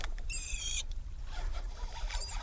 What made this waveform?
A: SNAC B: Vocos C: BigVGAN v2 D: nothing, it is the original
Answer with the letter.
C